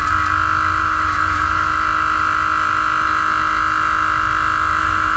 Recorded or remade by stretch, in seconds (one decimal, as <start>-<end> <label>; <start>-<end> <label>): 0.0-0.8 recorded; 0.8-1.7 remade; 1.7-4.8 recorded; 4.8-5.2 remade